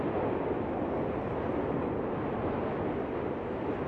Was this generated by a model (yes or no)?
no